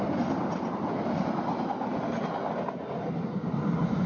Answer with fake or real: real